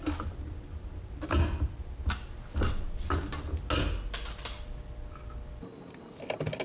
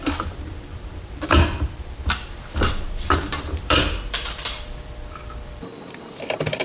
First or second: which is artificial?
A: second